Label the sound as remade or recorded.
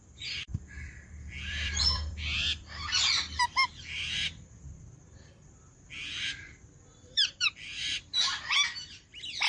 remade